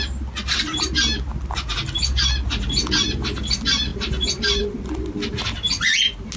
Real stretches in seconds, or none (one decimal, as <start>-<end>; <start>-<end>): 0.0-6.4